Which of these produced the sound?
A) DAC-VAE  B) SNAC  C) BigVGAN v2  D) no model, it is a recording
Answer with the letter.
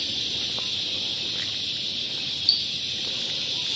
D